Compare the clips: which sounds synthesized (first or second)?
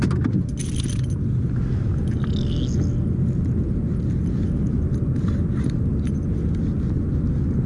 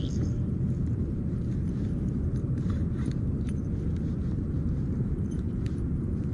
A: second